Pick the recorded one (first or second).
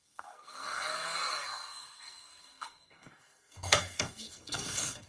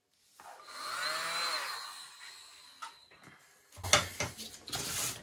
second